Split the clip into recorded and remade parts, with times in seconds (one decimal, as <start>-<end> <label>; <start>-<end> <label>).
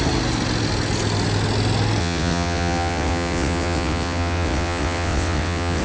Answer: 0.0-2.0 recorded; 2.0-5.8 remade